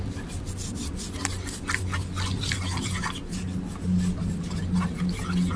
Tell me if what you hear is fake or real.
real